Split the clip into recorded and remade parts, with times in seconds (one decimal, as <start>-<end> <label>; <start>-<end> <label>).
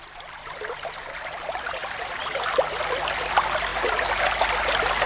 0.0-1.8 remade; 1.8-2.7 recorded; 2.7-3.7 remade; 3.7-4.4 recorded; 4.4-5.1 remade